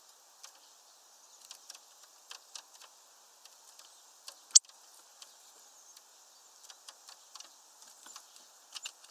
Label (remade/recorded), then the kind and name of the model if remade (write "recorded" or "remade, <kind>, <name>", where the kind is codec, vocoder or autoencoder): recorded